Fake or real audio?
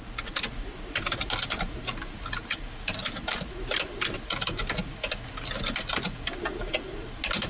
real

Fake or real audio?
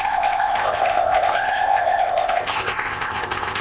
fake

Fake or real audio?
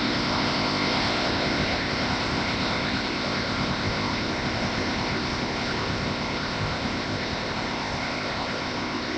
fake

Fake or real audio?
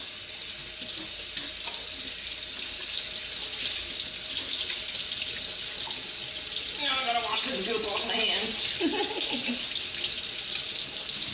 real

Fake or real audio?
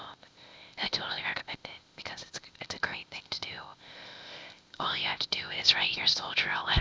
fake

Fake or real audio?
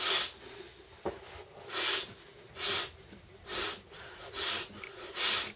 real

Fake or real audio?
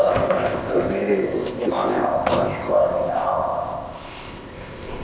fake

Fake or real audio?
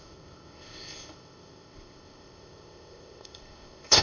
fake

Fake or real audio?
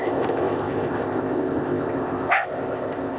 fake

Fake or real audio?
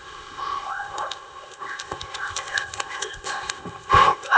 fake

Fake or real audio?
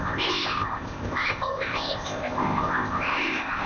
fake